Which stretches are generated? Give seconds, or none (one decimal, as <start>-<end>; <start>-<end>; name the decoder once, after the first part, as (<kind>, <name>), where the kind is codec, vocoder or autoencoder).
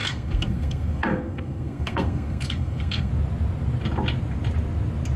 0.0-3.1 (codec, SNAC)